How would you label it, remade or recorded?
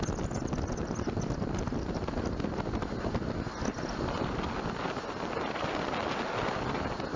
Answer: recorded